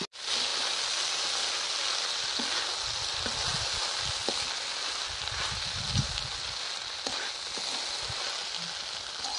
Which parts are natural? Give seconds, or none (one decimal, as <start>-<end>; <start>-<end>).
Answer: 0.0-9.4